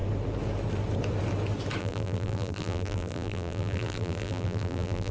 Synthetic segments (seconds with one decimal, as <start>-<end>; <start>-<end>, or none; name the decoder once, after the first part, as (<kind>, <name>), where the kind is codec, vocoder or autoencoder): 1.8-5.1 (vocoder, BigVGAN v2)